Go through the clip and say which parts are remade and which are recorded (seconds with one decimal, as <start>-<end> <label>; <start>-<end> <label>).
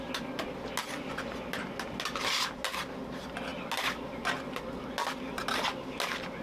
0.0-6.4 recorded